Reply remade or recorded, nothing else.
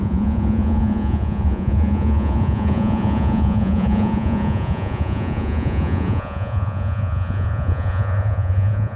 remade